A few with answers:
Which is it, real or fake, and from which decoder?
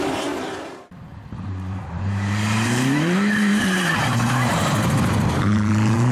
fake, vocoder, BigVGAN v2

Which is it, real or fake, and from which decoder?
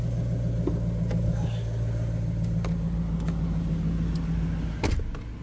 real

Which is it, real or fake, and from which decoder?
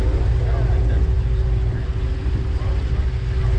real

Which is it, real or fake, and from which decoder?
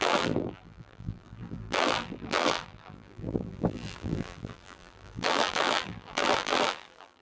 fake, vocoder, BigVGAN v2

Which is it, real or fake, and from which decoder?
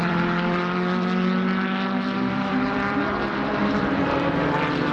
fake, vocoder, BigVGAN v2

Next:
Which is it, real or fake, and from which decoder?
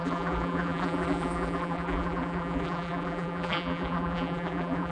fake, vocoder, BigVGAN v2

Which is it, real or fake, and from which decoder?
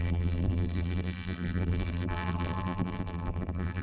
fake, vocoder, BigVGAN v2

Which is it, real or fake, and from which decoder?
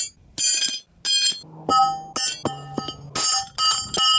real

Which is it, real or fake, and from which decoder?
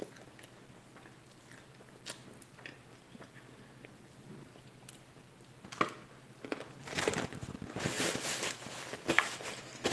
real